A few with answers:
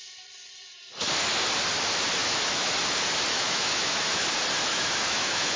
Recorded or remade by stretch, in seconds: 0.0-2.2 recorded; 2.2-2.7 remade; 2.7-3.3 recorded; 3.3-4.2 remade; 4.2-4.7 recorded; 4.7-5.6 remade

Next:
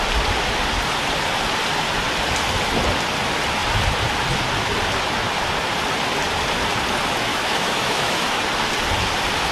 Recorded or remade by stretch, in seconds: 0.0-7.3 recorded; 7.3-8.4 remade; 8.4-9.5 recorded

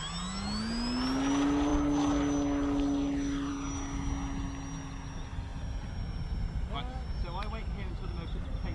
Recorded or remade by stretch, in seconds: 0.0-8.7 recorded

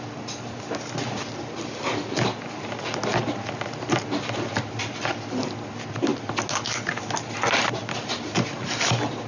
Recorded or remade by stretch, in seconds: 0.0-9.3 recorded